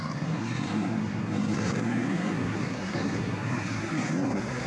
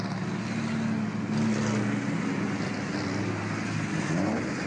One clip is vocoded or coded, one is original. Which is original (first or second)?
second